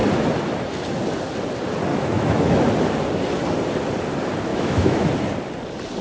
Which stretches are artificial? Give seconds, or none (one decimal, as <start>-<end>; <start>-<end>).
1.9-2.7; 4.5-5.1